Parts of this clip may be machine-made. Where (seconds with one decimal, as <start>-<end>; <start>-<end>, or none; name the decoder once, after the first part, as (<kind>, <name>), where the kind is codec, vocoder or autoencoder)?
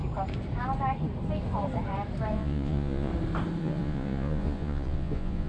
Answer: 2.3-3.1 (vocoder, Vocos); 3.6-5.5